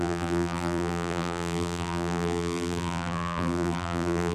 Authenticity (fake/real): fake